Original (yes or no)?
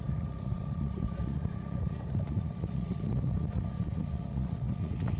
no